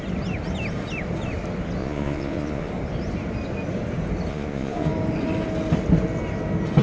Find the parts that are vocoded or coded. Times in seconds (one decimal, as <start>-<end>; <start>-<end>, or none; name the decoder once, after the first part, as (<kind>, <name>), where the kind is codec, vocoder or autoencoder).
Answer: 1.8-2.7 (vocoder, Vocos); 4.3-4.9